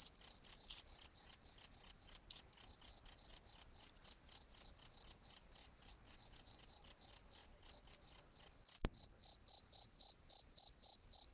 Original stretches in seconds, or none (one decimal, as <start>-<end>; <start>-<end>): 0.0-5.6; 6.6-11.3